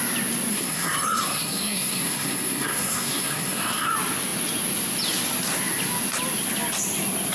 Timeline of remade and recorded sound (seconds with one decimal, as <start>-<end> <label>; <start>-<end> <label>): 0.0-0.5 recorded; 0.5-3.9 remade; 3.9-7.3 recorded